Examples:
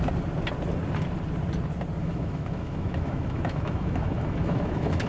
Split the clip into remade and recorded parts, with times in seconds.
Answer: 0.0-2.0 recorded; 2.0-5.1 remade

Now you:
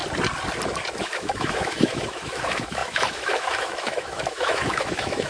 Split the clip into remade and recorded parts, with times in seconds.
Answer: 0.0-1.0 recorded; 1.0-5.3 remade

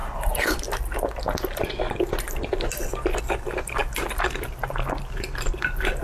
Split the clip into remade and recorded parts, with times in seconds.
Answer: 0.0-6.0 recorded

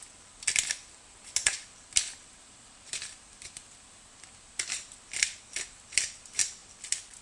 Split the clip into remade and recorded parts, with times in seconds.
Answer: 0.0-7.2 recorded

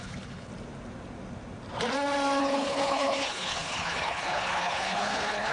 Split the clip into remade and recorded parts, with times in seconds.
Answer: 0.0-0.5 remade; 0.5-2.4 recorded; 2.4-5.5 remade

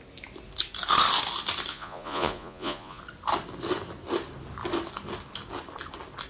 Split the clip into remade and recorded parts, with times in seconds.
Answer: 0.0-1.7 recorded; 1.7-3.0 remade; 3.0-6.3 recorded

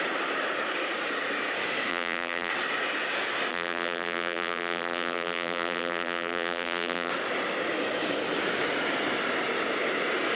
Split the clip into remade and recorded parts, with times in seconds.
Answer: 0.0-1.9 recorded; 1.9-2.5 remade; 2.5-3.5 recorded; 3.5-7.1 remade; 7.1-10.4 recorded

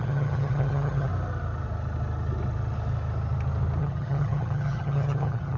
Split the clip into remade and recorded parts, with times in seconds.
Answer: 0.0-1.1 remade; 1.1-3.8 recorded; 3.8-5.6 remade